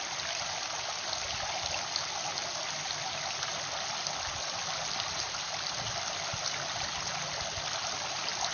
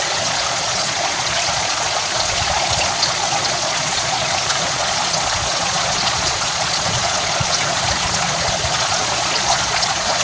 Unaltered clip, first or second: first